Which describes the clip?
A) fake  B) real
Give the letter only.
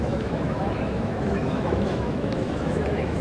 A